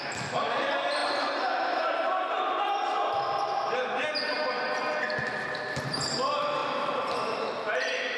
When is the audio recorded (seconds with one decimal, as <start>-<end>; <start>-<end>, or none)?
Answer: 0.0-8.2